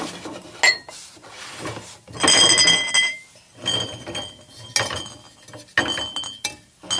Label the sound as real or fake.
real